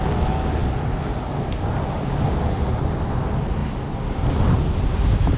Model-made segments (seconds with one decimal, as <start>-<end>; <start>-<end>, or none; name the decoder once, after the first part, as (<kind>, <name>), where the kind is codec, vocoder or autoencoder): none